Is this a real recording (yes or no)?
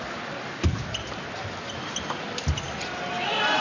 yes